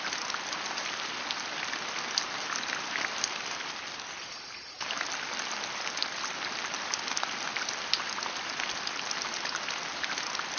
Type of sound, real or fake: real